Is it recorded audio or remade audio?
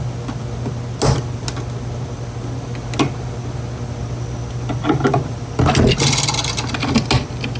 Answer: recorded